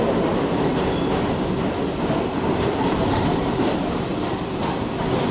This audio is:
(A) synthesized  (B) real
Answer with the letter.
B